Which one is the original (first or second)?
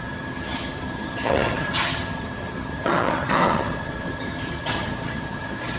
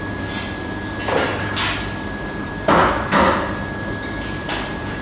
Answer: second